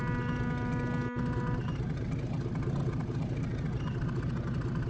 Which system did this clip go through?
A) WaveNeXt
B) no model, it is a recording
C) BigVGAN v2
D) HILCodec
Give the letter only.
B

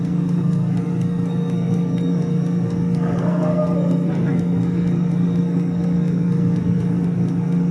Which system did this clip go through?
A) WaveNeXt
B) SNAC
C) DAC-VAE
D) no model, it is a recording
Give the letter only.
B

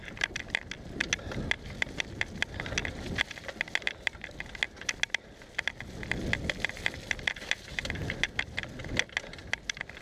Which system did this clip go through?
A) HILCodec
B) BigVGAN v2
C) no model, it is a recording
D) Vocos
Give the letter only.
C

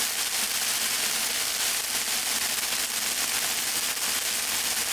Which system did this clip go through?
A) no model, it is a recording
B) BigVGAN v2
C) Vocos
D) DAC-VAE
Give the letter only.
A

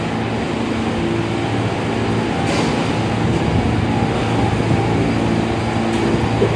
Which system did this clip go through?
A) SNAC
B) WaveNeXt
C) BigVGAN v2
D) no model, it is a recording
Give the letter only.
D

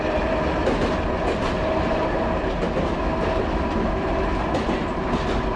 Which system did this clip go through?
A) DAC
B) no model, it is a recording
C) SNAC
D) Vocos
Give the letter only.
B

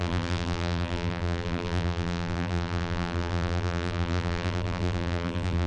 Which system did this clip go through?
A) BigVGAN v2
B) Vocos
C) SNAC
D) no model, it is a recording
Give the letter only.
A